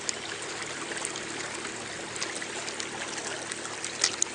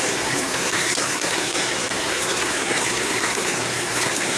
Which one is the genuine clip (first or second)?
first